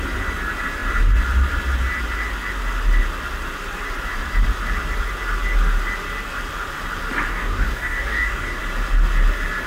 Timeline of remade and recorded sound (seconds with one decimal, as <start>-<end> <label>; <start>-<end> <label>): 0.0-7.3 recorded; 7.3-8.6 remade; 8.6-9.7 recorded